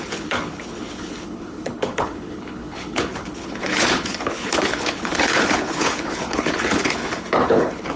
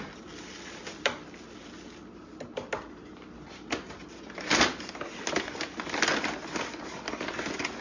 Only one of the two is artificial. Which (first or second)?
first